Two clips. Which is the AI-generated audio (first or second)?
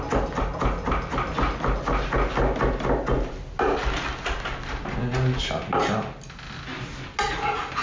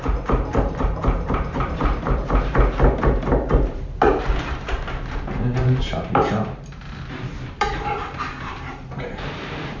second